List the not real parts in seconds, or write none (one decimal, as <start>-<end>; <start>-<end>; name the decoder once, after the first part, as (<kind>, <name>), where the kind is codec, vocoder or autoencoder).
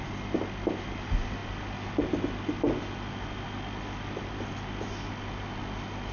none